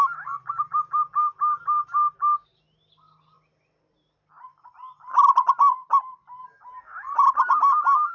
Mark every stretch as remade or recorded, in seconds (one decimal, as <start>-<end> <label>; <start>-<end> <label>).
0.0-8.1 recorded